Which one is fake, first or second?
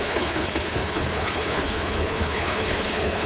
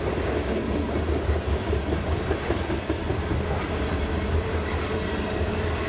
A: first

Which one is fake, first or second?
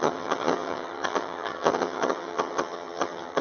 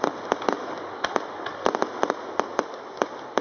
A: first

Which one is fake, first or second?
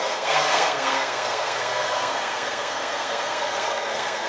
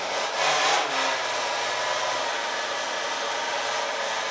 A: first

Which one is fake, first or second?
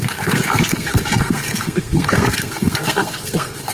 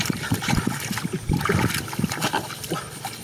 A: first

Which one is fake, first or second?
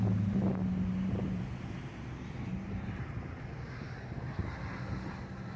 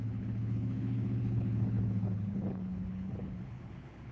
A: second